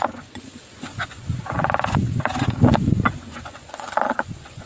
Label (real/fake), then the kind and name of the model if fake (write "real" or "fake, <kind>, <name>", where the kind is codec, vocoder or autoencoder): fake, vocoder, Vocos